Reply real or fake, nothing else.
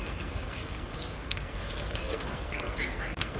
fake